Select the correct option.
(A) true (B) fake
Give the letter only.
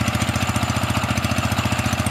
A